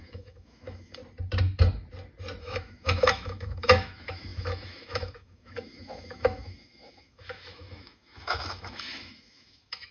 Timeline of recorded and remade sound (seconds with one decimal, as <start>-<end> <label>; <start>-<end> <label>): 0.0-1.0 remade; 1.0-2.4 recorded; 2.4-9.9 remade